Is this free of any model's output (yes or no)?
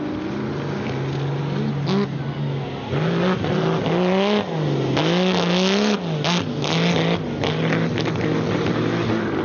yes